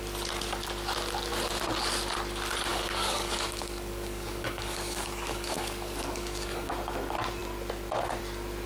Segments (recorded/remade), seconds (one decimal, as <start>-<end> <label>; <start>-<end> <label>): 0.0-2.7 recorded; 2.7-6.7 remade; 6.7-8.7 recorded